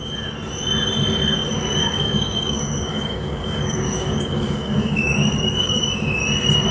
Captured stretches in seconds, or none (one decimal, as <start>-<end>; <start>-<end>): 0.0-1.8; 5.8-6.7